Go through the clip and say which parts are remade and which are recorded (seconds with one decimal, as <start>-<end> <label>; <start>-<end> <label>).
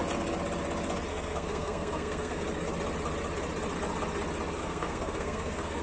0.0-1.1 recorded; 1.1-2.4 remade; 2.4-4.6 recorded; 4.6-5.8 remade